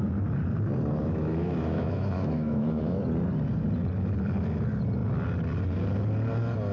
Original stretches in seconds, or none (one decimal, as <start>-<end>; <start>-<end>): 0.0-1.0; 3.0-6.7